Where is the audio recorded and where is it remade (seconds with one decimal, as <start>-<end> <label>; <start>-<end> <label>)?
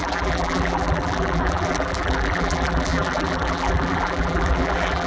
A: 0.0-5.1 remade